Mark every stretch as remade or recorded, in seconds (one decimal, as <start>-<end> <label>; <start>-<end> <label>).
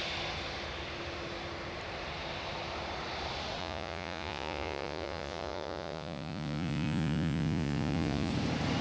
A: 0.0-3.6 recorded; 3.6-8.3 remade; 8.3-8.8 recorded